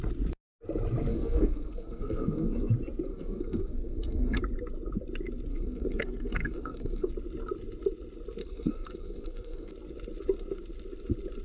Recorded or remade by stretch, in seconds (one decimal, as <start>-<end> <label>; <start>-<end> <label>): 0.0-1.1 recorded; 1.1-2.7 remade; 2.7-3.1 recorded; 3.1-4.4 remade; 4.4-5.5 recorded; 5.5-7.1 remade; 7.1-8.4 recorded; 8.4-9.7 remade; 9.7-11.4 recorded